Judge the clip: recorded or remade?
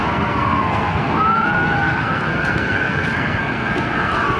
remade